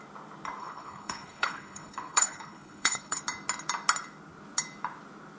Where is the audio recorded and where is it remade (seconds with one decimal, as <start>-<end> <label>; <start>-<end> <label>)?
0.0-0.6 recorded; 0.6-3.2 remade; 3.2-5.4 recorded